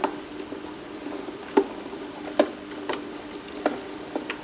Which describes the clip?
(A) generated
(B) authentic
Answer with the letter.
A